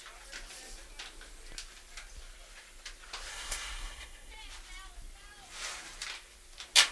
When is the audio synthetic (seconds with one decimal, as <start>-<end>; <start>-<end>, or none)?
3.3-4.3